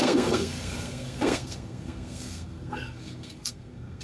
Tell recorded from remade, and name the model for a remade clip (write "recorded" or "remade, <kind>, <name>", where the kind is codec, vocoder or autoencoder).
remade, codec, SNAC